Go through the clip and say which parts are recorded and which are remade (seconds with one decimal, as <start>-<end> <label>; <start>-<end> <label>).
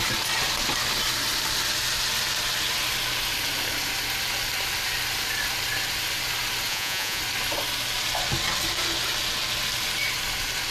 0.0-6.7 recorded; 6.7-7.2 remade; 7.2-10.7 recorded